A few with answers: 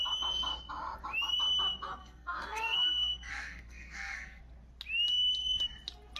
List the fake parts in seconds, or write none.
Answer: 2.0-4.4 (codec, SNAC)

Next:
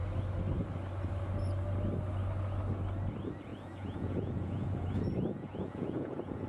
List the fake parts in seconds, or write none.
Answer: 3.5-6.5 (vocoder, Vocos)

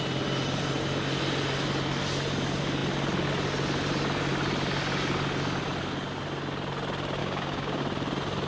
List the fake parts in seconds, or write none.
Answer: 7.2-7.8 (codec, DAC)

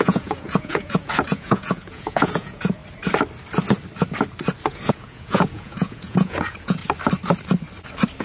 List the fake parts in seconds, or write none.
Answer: 0.0-2.8 (vocoder, Vocos); 4.7-6.8

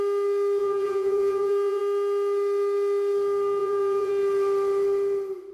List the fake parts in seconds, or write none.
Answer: 0.6-1.8 (vocoder, Vocos); 3.6-4.1

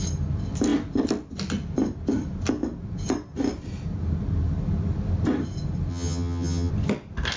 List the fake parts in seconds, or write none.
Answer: 5.9-6.7 (vocoder, HiFi-GAN)

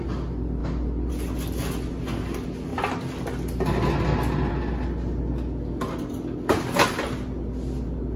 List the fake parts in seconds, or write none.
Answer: none